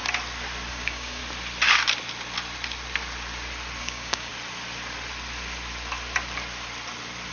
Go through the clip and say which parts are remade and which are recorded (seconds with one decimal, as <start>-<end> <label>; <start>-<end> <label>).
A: 0.0-0.7 recorded; 0.7-1.2 remade; 1.2-3.8 recorded; 3.8-4.3 remade; 4.3-7.3 recorded